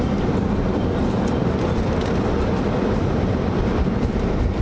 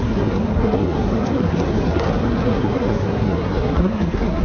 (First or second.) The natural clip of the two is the first